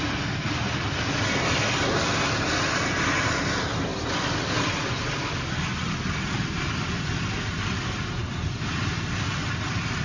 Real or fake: real